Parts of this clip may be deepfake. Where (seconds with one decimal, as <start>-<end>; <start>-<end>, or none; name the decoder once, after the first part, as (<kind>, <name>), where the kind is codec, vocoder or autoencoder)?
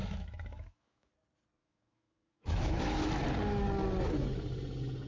0.0-1.1 (autoencoder, DAC-VAE); 1.6-3.1